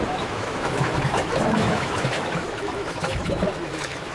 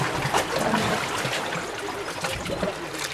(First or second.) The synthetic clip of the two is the first